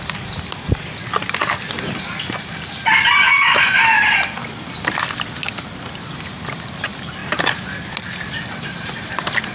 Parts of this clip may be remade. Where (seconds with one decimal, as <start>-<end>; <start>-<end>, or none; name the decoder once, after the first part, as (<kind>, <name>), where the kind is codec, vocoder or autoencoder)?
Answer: none